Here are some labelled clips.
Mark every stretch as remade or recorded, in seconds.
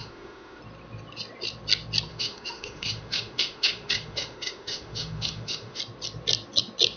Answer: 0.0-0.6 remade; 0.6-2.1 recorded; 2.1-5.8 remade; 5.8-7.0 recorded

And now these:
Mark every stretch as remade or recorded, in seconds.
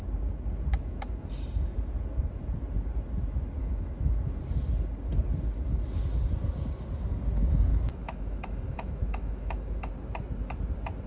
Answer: 0.0-0.7 recorded; 0.7-1.3 remade; 1.3-3.6 recorded; 3.6-4.4 remade; 4.4-7.7 recorded; 7.7-9.9 remade; 9.9-11.1 recorded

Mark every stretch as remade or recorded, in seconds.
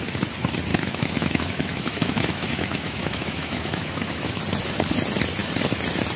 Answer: 0.0-0.7 recorded; 0.7-4.4 remade; 4.4-6.2 recorded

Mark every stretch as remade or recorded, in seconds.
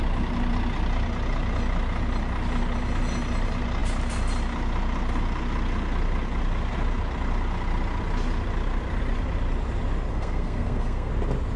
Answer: 0.0-10.1 recorded; 10.1-11.1 remade; 11.1-11.6 recorded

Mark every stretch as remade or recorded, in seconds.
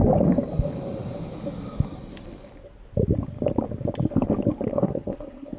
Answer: 0.0-4.7 recorded; 4.7-5.6 remade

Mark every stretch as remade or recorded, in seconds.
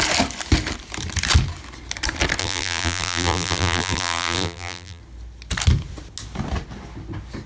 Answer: 0.0-2.4 recorded; 2.4-5.0 remade; 5.0-7.5 recorded